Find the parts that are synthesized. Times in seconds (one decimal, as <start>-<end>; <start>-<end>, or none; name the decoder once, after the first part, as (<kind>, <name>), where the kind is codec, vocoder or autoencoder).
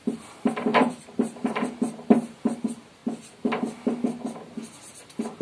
0.7-1.8 (vocoder, BigVGAN v2)